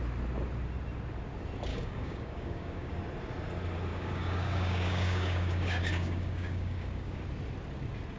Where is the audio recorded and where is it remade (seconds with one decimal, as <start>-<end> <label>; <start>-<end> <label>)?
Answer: 0.0-1.7 recorded; 1.7-3.0 remade; 3.0-3.9 recorded; 3.9-7.2 remade; 7.2-8.2 recorded